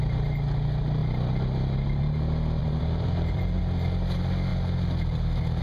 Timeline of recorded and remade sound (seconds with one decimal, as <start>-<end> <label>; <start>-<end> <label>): 0.0-2.6 recorded; 2.6-3.6 remade; 3.6-5.6 recorded